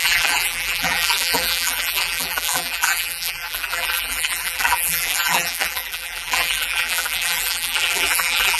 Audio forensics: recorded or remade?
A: remade